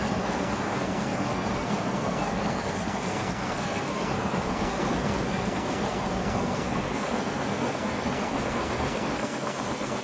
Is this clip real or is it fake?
fake